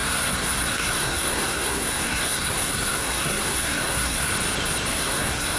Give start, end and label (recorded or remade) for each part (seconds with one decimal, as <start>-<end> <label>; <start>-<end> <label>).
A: 0.0-4.3 remade; 4.3-4.9 recorded; 4.9-5.6 remade

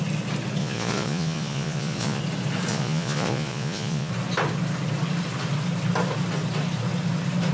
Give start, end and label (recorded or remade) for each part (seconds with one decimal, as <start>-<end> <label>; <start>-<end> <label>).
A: 0.0-0.6 recorded; 0.6-2.2 remade; 2.2-2.7 recorded; 2.7-4.1 remade; 4.1-7.5 recorded

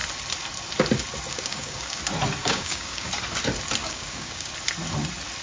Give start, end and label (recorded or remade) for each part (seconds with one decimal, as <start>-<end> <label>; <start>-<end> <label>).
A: 0.0-1.3 recorded; 1.3-2.0 remade; 2.0-2.4 recorded; 2.4-3.1 remade; 3.1-3.8 recorded; 3.8-4.5 remade; 4.5-5.4 recorded